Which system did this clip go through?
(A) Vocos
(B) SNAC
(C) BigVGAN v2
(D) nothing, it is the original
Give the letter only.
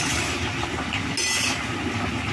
D